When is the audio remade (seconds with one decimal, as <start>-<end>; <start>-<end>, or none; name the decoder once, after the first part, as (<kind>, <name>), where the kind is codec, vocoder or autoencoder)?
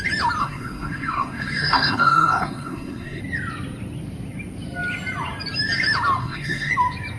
0.4-3.2 (codec, SNAC); 6.2-6.7